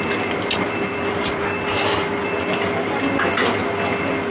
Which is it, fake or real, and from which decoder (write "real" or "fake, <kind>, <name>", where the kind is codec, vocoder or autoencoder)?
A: real